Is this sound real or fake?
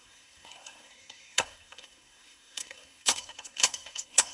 fake